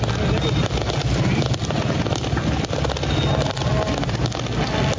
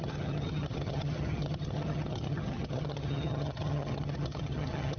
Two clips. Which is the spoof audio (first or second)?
second